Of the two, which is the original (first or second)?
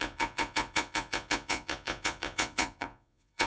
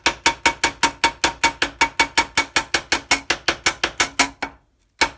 second